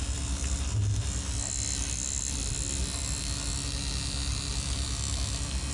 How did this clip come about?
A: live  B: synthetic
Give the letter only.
A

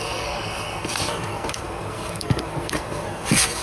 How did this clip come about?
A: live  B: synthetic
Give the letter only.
B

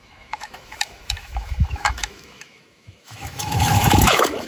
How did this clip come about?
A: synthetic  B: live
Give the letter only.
A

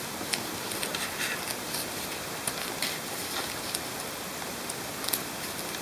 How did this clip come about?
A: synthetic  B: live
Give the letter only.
B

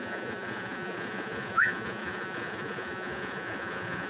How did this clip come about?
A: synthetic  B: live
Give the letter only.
A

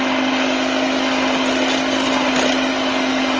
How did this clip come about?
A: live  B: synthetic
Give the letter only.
A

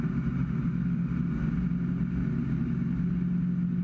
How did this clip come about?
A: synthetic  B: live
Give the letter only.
B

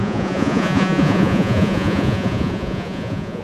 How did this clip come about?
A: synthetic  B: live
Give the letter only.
A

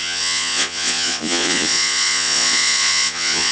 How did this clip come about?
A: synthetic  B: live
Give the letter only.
A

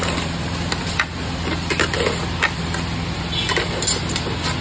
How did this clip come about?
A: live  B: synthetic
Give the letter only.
A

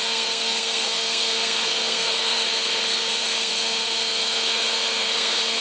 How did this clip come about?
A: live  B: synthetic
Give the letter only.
B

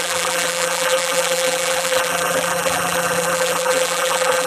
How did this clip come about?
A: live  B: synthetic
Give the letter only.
B